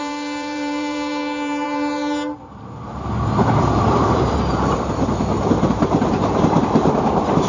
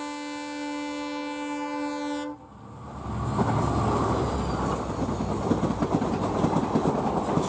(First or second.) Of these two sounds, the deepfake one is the first